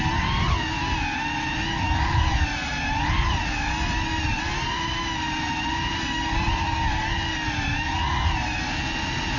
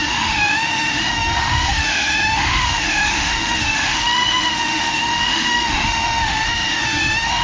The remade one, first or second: second